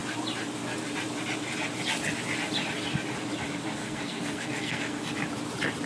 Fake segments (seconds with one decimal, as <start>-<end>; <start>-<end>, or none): 3.8-5.0